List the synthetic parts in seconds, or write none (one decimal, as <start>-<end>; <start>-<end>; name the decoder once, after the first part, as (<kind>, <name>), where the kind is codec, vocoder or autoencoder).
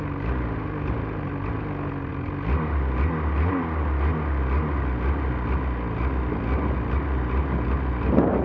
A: none